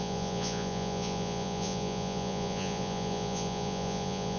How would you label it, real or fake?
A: fake